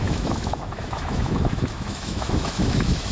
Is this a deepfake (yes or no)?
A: yes